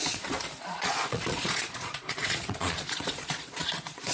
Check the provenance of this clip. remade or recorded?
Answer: remade